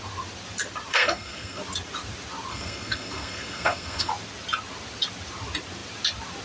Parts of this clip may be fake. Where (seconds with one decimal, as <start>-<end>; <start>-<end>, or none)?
0.9-1.6; 2.5-4.1